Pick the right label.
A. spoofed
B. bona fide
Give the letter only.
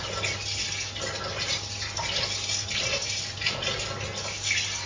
B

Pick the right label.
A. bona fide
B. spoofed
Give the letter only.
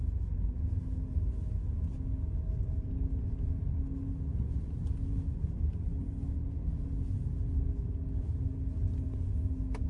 A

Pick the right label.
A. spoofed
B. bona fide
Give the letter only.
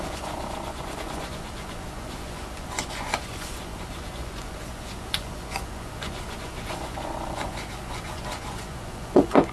A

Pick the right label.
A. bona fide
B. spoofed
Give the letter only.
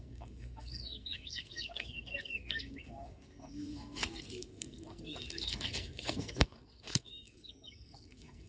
B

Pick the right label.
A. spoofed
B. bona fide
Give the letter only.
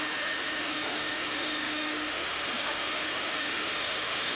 A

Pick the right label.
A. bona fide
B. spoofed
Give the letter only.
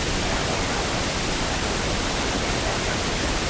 A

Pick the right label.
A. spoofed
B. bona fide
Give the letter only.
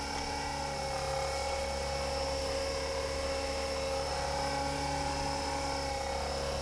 B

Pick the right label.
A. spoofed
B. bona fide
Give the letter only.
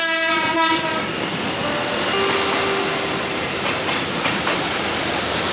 B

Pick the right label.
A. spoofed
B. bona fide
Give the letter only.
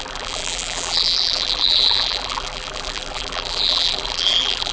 A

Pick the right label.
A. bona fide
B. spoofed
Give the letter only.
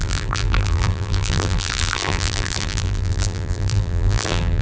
B